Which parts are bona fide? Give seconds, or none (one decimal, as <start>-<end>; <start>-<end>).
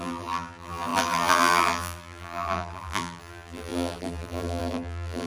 none